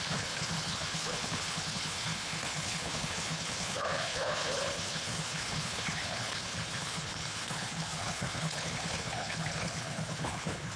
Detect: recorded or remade remade